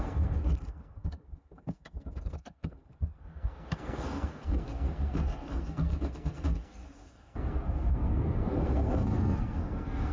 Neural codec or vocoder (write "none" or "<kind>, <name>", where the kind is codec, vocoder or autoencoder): codec, SNAC